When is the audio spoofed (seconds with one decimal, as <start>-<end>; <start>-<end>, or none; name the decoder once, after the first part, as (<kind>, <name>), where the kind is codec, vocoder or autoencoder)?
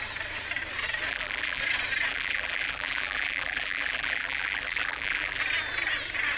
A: 1.1-1.6 (vocoder, BigVGAN v2); 2.1-5.4